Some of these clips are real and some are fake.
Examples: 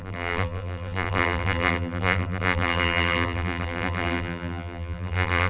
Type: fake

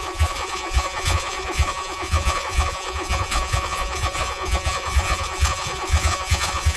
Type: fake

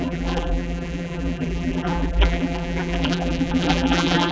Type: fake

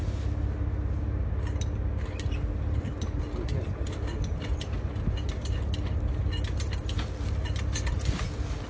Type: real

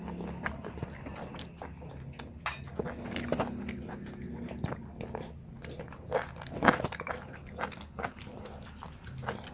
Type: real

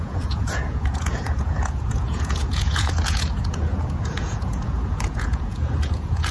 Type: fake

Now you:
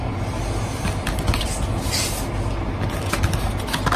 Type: real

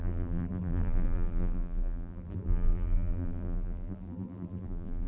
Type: fake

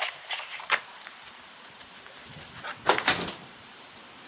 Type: fake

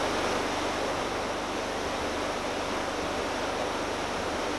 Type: real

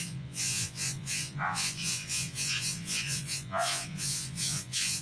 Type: fake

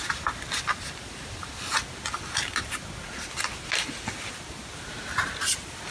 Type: real